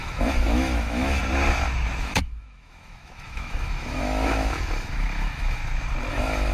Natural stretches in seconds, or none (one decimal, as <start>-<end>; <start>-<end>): 1.2-2.0; 5.6-6.1